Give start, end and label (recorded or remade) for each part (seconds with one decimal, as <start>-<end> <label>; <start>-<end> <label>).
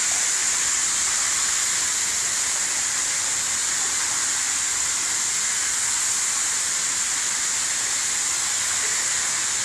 0.0-9.6 recorded